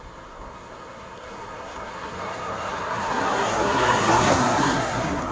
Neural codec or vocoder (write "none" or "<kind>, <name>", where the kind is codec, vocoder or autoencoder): codec, SNAC